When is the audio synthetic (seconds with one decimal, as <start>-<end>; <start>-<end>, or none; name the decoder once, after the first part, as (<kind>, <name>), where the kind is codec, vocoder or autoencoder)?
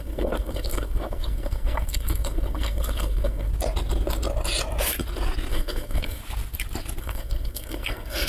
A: 0.0-3.5 (codec, SNAC); 5.5-6.2; 7.0-8.3